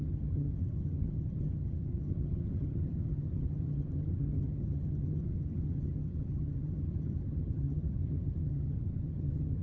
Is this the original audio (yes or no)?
no